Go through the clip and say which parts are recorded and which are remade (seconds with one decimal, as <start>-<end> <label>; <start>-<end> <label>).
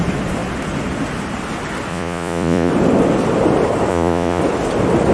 0.0-1.9 recorded; 1.9-2.7 remade; 2.7-3.9 recorded; 3.9-4.4 remade; 4.4-5.1 recorded